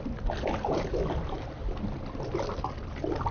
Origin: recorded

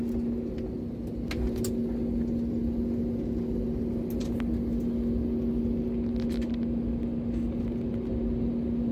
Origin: recorded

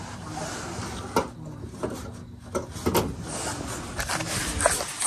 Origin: recorded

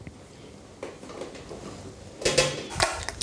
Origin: recorded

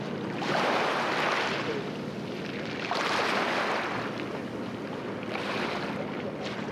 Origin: recorded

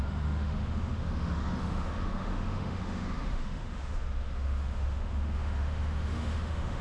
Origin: remade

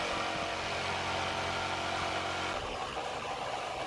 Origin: recorded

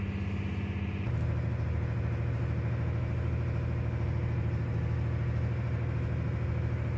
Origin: recorded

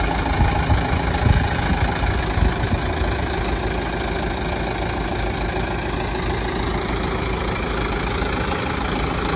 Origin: recorded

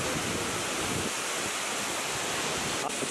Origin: recorded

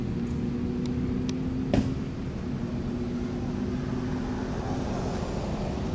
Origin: recorded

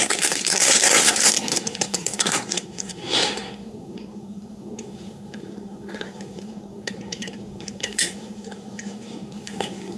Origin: remade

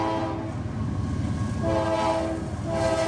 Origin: recorded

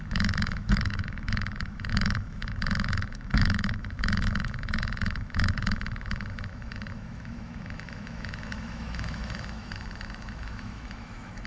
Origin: remade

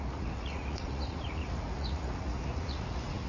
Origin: remade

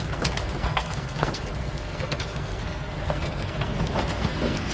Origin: remade